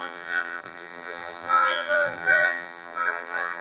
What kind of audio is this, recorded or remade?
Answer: remade